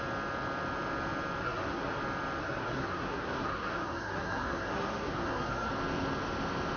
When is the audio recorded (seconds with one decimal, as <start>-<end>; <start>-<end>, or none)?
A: 0.0-1.4; 2.0-2.4; 5.7-6.8